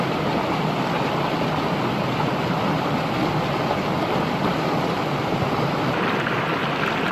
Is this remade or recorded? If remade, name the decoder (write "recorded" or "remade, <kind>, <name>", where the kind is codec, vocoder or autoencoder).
recorded